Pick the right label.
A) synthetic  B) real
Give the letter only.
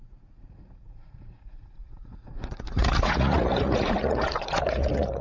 A